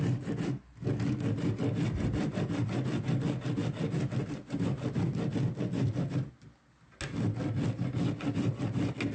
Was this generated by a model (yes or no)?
no